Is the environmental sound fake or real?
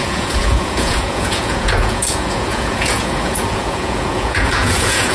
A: fake